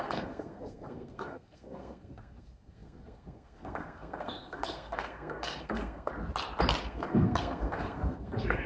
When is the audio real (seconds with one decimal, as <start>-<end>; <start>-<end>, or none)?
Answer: 6.1-6.8